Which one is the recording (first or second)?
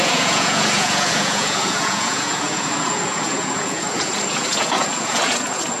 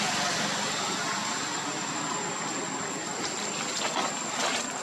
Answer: second